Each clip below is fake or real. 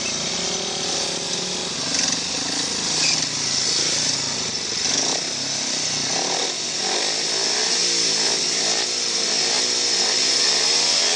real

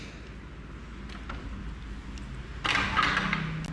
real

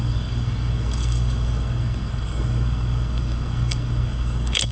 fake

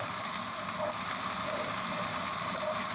real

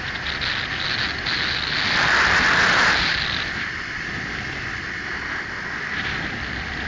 real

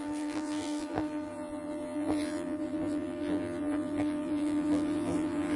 fake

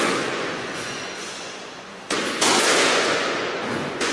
fake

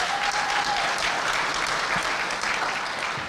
real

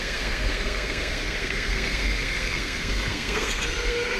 fake